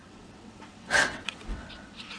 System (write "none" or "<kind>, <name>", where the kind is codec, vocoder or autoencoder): vocoder, WaveNeXt